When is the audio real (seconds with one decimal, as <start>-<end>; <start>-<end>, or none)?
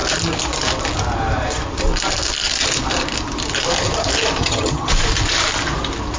0.0-4.4; 4.9-6.2